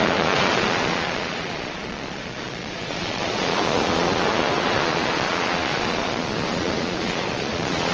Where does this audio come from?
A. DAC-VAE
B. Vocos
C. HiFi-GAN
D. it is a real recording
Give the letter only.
B